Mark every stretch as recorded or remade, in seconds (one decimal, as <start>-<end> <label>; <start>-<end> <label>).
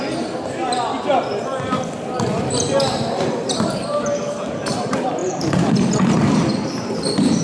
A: 0.0-7.4 remade